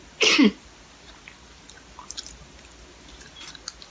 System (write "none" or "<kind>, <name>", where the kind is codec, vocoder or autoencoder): none